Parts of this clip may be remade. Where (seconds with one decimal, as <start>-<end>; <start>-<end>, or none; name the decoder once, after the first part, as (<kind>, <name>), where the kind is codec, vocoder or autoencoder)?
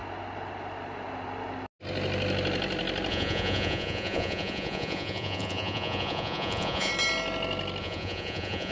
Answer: 3.1-6.9 (vocoder, Vocos); 7.8-8.7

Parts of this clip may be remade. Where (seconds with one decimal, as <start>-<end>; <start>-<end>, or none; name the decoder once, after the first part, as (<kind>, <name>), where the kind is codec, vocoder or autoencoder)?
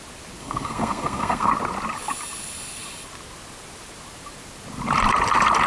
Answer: 0.4-1.5 (codec, SNAC)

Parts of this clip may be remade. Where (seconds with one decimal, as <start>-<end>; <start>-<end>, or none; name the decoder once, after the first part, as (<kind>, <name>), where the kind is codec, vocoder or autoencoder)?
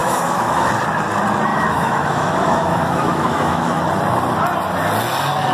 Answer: 0.0-0.7 (autoencoder, DAC-VAE); 1.5-3.8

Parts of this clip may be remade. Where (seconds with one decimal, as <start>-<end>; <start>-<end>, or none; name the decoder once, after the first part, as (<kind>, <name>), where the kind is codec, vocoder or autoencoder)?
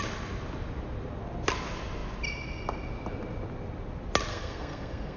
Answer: 4.3-5.2 (codec, SNAC)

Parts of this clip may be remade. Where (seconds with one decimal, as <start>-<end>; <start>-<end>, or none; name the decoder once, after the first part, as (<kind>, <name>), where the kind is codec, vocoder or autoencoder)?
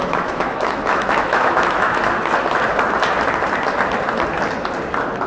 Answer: 0.0-2.0 (autoencoder, DAC-VAE)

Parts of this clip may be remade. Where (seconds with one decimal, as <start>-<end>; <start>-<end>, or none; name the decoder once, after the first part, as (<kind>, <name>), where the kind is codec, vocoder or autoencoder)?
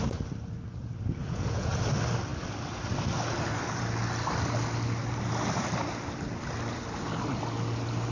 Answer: 1.2-1.8 (vocoder, Vocos)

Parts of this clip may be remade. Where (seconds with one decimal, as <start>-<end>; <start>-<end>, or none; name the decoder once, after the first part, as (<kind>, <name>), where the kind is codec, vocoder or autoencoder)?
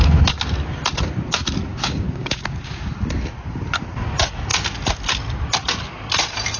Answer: 1.7-2.9 (codec, DAC)